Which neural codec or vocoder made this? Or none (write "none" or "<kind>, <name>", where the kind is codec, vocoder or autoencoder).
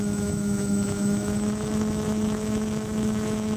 autoencoder, DAC-VAE